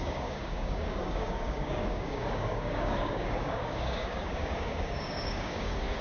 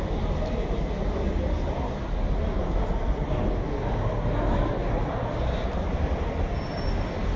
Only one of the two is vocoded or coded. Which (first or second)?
first